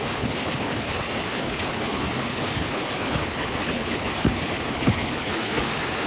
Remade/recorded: remade